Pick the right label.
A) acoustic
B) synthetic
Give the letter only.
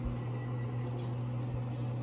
A